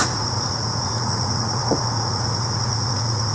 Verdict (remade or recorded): remade